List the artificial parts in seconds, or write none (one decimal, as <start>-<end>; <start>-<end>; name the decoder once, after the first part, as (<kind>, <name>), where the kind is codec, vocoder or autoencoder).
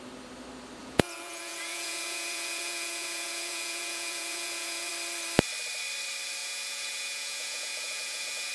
0.8-4.9 (vocoder, Vocos); 6.4-8.5